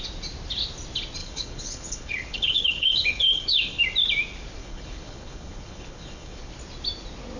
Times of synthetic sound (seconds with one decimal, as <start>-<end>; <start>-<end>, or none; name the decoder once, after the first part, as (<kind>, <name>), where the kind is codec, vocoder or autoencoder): 1.2-3.8 (codec, HILCodec); 4.6-6.5